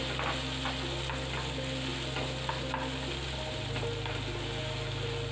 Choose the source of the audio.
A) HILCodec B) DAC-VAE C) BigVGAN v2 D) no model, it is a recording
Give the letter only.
D